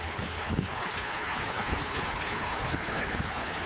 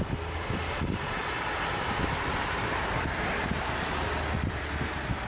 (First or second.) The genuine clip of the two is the second